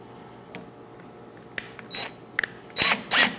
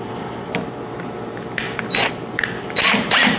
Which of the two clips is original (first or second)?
first